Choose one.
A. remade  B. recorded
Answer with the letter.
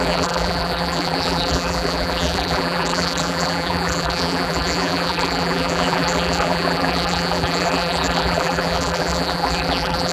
A